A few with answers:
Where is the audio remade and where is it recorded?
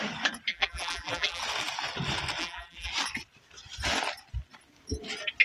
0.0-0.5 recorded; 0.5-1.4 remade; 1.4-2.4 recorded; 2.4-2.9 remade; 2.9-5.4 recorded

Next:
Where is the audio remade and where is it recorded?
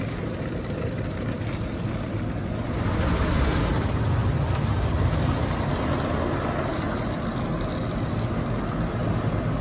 0.0-4.2 recorded; 4.2-5.7 remade; 5.7-9.6 recorded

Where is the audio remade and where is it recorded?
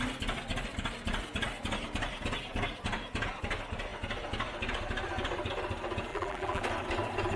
0.0-6.1 recorded; 6.1-6.6 remade; 6.6-7.4 recorded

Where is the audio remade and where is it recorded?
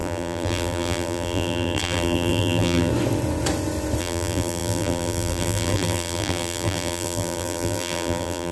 0.0-2.9 remade; 2.9-4.0 recorded; 4.0-8.5 remade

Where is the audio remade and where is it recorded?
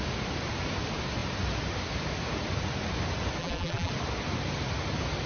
0.0-3.4 recorded; 3.4-3.9 remade; 3.9-5.3 recorded